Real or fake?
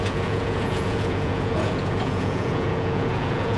fake